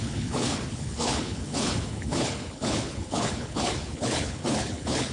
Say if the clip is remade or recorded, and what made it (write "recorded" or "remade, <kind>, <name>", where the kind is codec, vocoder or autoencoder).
remade, codec, HILCodec